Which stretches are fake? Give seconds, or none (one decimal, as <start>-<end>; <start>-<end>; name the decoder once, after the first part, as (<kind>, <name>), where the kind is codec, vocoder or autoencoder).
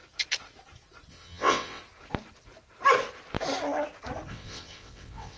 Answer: 1.1-1.8 (vocoder, WaveNeXt); 4.3-5.4